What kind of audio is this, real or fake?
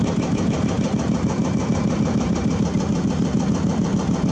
real